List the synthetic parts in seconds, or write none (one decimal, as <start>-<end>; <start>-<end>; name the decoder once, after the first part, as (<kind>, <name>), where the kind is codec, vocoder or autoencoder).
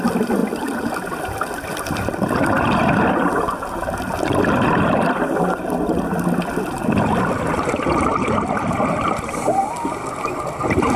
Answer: 0.4-1.2 (vocoder, BigVGAN v2)